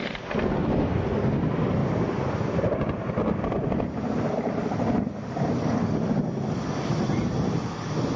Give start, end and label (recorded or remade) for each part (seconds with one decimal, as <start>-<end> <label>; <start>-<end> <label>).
0.0-1.1 remade; 1.1-1.8 recorded; 1.8-5.9 remade; 5.9-8.2 recorded